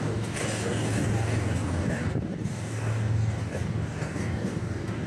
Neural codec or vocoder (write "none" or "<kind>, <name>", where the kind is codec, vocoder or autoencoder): codec, DAC